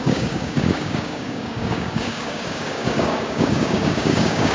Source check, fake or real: fake